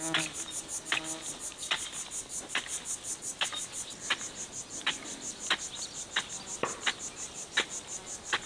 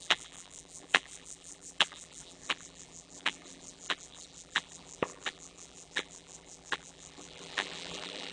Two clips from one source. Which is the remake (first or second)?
second